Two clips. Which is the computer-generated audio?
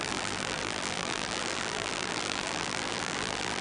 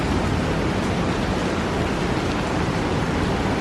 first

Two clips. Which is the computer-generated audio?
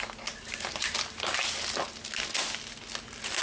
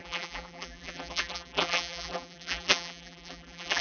second